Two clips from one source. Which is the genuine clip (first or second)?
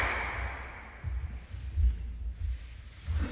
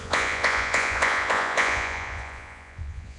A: first